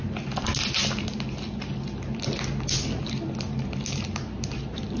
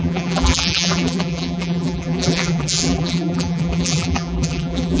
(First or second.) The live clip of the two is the first